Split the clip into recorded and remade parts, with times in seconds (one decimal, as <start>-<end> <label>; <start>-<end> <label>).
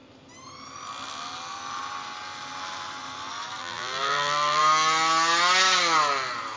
0.0-3.6 recorded; 3.6-4.6 remade; 4.6-6.6 recorded